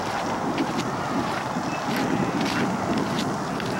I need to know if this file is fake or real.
real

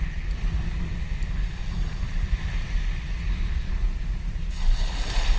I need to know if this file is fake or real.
real